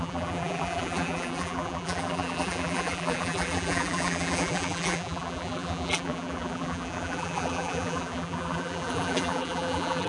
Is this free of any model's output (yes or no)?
no